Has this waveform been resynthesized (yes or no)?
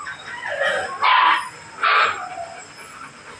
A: no